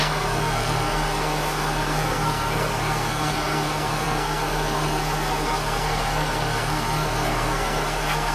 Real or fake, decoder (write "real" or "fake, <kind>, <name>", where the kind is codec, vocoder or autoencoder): fake, codec, SNAC